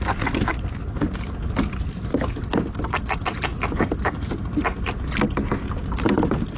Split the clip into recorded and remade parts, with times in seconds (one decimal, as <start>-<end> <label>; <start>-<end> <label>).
0.0-6.6 recorded

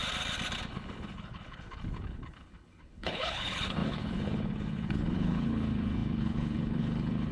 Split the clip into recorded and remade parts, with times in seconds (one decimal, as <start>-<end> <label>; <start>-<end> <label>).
0.0-0.7 recorded; 0.7-7.3 remade

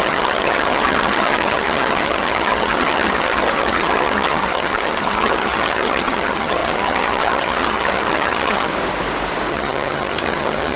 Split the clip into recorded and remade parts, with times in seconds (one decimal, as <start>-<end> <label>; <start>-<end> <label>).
0.0-8.7 remade; 8.7-9.5 recorded; 9.5-10.8 remade

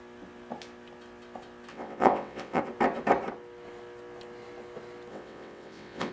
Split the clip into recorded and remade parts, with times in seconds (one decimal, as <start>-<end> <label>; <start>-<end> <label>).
0.0-1.7 recorded; 1.7-2.6 remade; 2.6-5.1 recorded; 5.1-6.1 remade

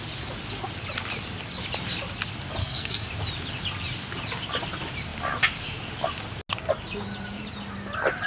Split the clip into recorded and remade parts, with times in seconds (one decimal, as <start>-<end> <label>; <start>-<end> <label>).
0.0-2.6 recorded; 2.6-3.1 remade; 3.1-8.3 recorded

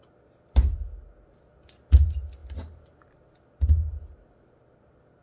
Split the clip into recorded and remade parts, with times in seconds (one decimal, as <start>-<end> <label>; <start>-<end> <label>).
0.0-5.2 recorded

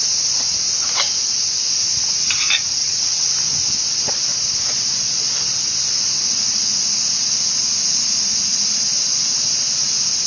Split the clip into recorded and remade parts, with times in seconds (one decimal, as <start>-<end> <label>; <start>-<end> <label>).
0.0-2.8 recorded; 2.8-3.3 remade; 3.3-10.3 recorded

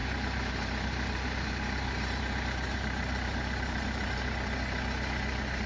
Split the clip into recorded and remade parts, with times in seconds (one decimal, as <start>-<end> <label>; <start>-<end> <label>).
0.0-2.2 remade; 2.2-2.7 recorded; 2.7-4.2 remade; 4.2-5.7 recorded